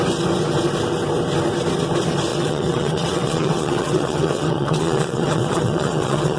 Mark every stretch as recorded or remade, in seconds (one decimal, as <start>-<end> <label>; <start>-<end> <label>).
0.0-2.3 recorded; 2.3-6.4 remade